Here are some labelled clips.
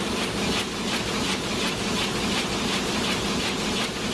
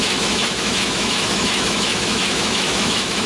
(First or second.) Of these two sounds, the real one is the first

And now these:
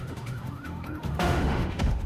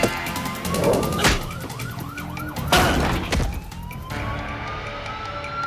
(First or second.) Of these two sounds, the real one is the second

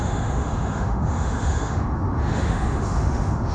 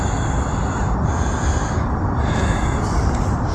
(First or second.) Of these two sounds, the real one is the second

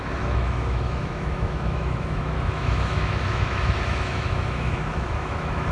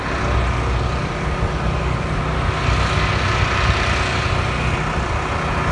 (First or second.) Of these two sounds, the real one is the second